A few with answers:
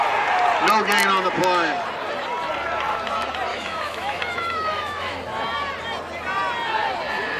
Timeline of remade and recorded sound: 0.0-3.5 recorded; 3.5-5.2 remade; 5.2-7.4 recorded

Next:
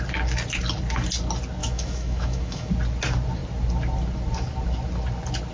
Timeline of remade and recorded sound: 0.0-1.6 recorded; 1.6-2.7 remade; 2.7-5.5 recorded